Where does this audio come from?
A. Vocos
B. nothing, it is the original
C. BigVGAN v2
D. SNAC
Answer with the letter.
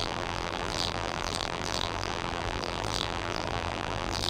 C